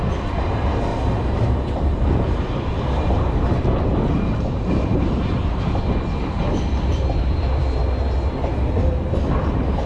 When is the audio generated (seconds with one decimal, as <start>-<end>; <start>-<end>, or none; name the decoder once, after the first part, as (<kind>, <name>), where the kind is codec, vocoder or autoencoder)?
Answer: 0.9-5.7 (vocoder, BigVGAN v2)